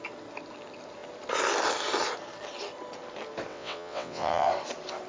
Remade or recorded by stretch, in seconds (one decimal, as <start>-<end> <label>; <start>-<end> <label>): 0.0-3.5 recorded; 3.5-4.5 remade; 4.5-5.1 recorded